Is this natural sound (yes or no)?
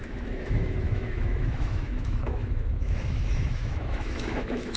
no